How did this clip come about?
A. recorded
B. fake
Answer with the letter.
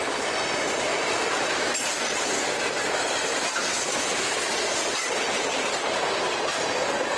B